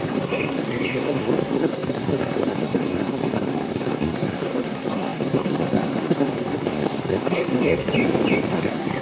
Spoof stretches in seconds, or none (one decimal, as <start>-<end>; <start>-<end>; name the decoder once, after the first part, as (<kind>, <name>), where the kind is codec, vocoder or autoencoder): 0.0-7.9 (codec, SNAC); 8.5-9.0